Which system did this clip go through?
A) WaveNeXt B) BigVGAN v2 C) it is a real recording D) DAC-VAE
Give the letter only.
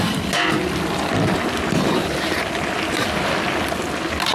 C